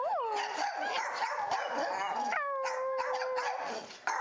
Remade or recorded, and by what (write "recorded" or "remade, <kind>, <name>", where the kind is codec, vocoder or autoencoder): recorded